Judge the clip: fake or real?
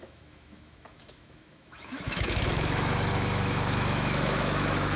fake